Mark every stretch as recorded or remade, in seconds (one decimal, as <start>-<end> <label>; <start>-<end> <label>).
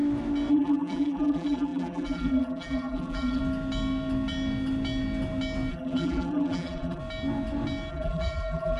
0.0-0.5 recorded; 0.5-3.4 remade; 3.4-5.7 recorded; 5.7-7.0 remade; 7.0-7.9 recorded; 7.9-8.8 remade